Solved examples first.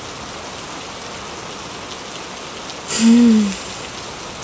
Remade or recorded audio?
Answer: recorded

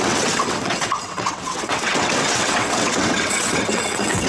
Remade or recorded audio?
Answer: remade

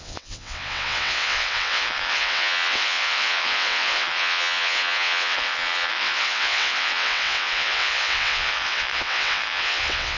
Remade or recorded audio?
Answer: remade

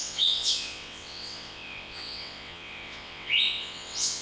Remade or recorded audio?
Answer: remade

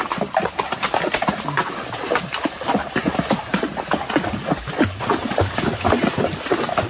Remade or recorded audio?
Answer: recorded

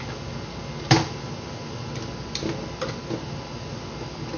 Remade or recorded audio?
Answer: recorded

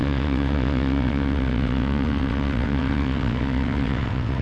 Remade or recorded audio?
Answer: remade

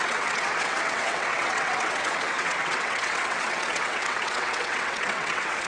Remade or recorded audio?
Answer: remade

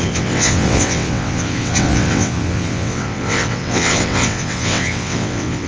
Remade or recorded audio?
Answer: remade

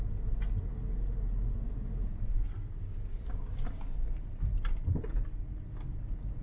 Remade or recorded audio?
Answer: recorded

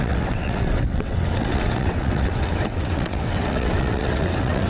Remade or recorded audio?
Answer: remade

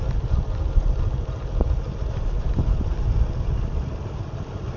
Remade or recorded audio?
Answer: recorded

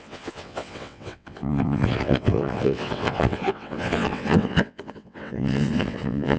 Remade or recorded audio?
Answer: remade